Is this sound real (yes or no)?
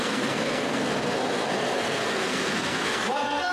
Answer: no